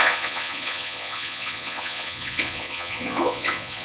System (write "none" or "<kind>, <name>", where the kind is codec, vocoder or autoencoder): vocoder, Vocos